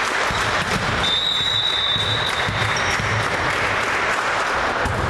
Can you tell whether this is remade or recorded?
recorded